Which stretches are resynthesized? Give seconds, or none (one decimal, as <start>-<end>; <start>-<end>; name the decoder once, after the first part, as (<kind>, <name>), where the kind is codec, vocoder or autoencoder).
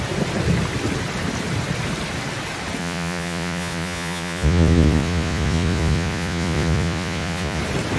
2.8-7.6 (vocoder, Vocos)